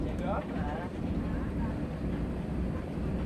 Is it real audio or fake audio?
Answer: fake